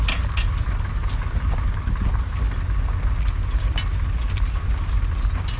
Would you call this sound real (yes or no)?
yes